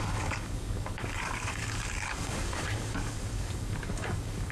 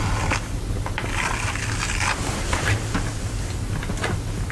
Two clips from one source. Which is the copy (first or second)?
first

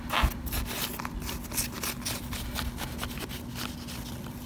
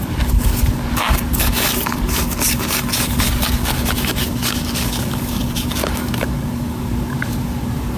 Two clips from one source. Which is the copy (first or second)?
second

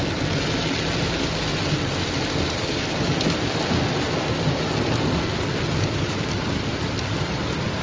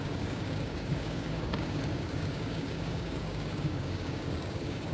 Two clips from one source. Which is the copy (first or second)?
second